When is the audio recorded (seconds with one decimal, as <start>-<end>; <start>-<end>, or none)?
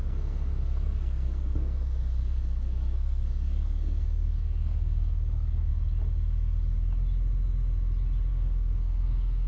5.7-8.3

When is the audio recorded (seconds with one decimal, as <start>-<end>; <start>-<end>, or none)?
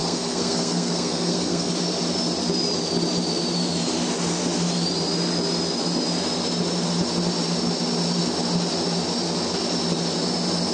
1.7-10.7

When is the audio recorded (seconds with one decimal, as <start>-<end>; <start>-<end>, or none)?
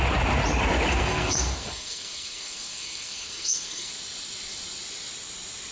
0.0-0.9; 3.9-5.7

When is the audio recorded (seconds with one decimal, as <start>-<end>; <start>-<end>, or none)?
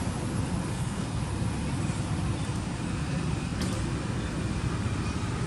0.0-0.7; 1.2-5.5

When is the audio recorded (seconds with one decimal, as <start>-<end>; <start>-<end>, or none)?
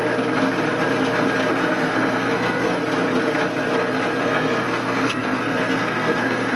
0.0-1.5; 2.8-4.2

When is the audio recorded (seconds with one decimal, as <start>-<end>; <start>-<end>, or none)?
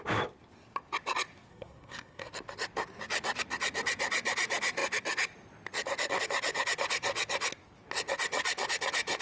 0.0-1.5; 2.3-9.2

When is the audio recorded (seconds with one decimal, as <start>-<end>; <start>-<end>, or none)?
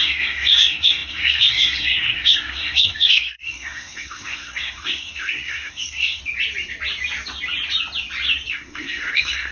6.2-8.5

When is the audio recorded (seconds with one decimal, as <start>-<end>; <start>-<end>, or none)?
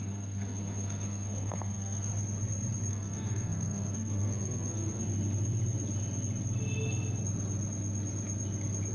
2.1-2.9; 5.0-8.9